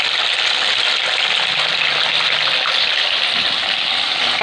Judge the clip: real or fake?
real